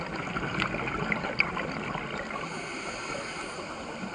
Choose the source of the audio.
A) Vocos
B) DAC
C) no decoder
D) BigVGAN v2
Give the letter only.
C